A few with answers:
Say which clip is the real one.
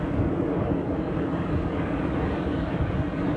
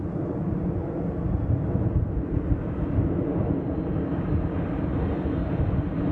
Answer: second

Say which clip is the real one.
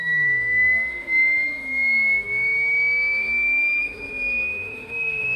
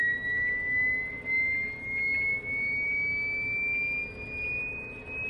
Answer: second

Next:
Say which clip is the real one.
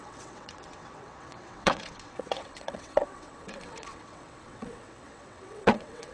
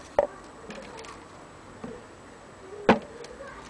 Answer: second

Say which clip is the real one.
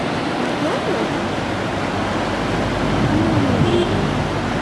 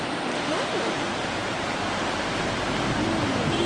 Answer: first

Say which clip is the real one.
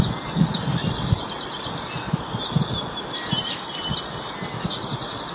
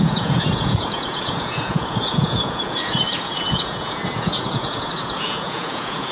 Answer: first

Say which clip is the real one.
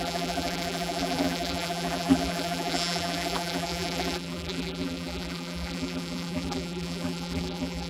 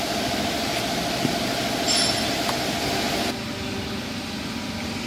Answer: second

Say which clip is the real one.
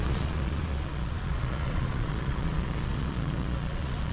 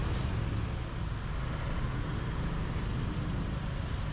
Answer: second